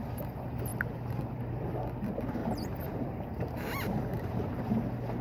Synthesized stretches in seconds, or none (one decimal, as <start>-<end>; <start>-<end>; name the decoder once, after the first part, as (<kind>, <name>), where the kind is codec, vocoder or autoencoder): 2.4-4.6 (vocoder, BigVGAN v2)